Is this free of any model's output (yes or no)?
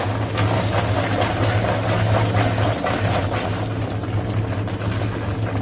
yes